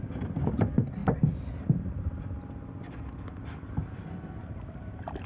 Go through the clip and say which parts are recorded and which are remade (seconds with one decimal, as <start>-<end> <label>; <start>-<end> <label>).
0.0-4.4 recorded; 4.4-5.3 remade